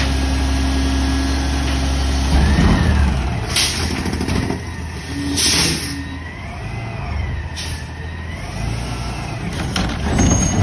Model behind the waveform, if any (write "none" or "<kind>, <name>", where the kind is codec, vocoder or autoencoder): none